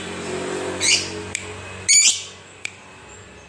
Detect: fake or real real